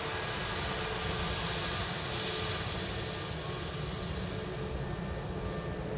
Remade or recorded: recorded